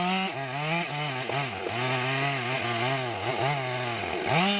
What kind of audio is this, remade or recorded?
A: recorded